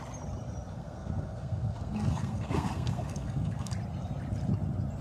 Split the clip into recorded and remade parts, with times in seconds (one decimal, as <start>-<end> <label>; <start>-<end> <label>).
0.0-0.7 recorded; 0.7-3.7 remade; 3.7-5.0 recorded

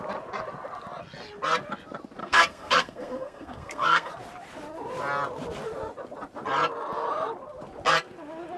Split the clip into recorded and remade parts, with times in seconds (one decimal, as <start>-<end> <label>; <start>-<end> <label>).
0.0-2.2 recorded; 2.2-4.1 remade; 4.1-8.6 recorded

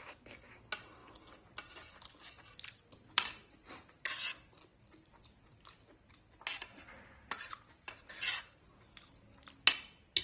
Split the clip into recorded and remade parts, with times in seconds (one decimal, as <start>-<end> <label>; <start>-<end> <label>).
0.0-10.2 recorded

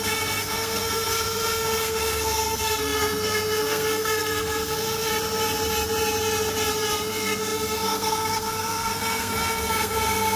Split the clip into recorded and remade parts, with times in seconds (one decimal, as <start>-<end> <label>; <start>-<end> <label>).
0.0-5.1 remade; 5.1-6.9 recorded; 6.9-10.4 remade

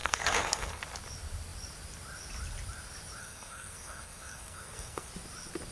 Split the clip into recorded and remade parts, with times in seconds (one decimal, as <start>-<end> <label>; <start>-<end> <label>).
0.0-0.8 remade; 0.8-3.2 recorded; 3.2-5.1 remade; 5.1-5.7 recorded